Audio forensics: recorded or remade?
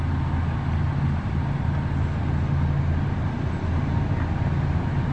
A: recorded